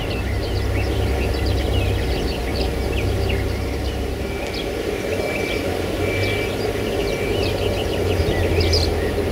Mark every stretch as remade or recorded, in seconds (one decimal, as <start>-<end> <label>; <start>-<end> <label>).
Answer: 0.0-9.3 recorded